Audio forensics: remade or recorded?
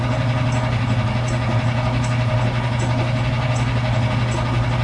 recorded